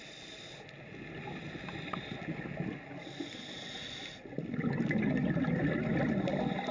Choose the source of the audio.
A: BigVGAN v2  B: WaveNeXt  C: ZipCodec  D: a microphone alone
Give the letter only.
D